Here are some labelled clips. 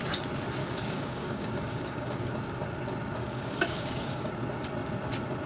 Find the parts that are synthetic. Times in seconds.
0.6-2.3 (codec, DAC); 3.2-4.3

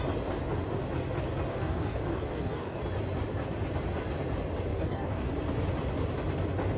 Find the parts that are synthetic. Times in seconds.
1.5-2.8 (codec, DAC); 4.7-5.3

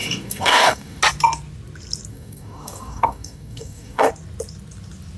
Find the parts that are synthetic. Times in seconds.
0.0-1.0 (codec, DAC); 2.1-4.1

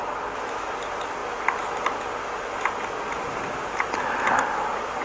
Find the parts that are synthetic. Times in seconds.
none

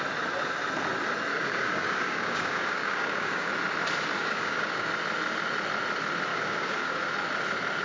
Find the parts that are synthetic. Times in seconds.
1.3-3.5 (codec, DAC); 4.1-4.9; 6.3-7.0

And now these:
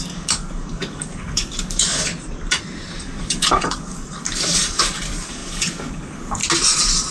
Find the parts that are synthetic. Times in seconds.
0.0-2.1 (codec, DAC); 3.0-6.4

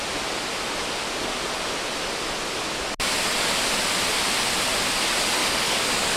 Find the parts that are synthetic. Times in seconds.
5.4-6.2 (codec, DAC)